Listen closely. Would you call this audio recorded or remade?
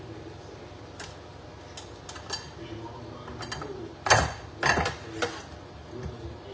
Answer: recorded